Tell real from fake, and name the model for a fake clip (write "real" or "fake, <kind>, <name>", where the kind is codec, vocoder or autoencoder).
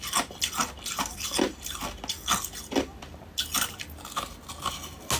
real